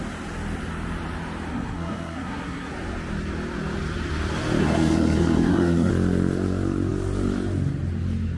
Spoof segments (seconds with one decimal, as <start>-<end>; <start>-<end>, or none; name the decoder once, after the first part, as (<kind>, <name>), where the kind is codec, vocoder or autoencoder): 1.5-2.7 (codec, SNAC); 4.6-5.9